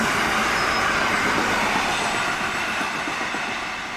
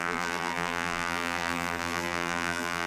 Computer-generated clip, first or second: second